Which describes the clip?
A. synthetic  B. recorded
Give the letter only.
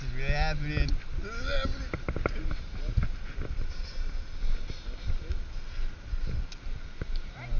B